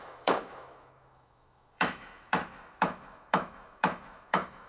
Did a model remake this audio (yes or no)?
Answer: yes